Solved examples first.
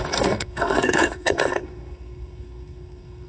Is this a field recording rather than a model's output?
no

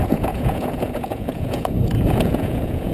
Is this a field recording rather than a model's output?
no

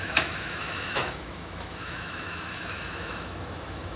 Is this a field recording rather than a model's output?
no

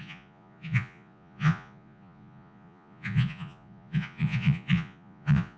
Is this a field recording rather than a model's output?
no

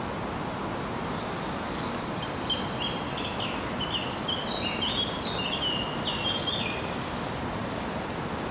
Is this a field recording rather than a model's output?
yes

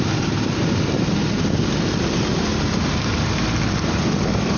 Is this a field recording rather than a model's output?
yes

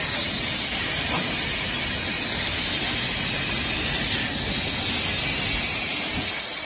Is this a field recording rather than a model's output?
yes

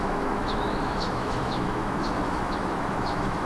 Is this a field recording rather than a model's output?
no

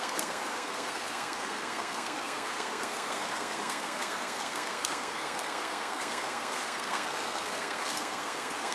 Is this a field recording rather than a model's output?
no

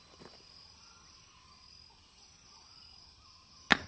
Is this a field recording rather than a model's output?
yes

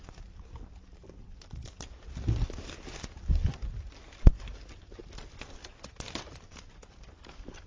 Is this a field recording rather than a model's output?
yes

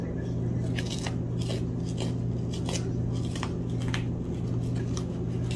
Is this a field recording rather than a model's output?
yes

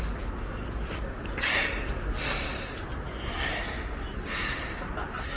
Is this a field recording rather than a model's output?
yes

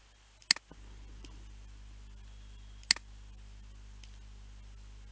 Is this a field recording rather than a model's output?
yes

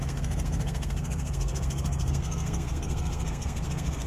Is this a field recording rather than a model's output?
no